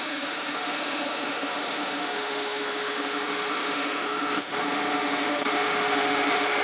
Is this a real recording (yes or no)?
no